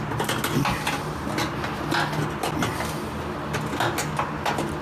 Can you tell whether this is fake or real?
real